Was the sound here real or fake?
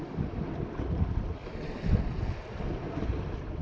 real